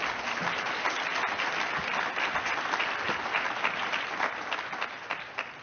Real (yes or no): yes